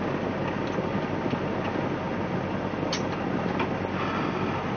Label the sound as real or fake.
real